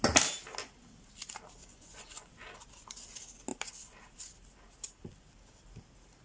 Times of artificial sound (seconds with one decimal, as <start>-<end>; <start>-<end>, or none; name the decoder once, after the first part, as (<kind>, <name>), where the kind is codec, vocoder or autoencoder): 1.6-2.3 (vocoder, Vocos)